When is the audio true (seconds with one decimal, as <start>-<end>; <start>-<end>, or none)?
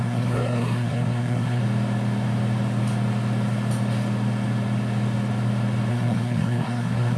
1.6-5.9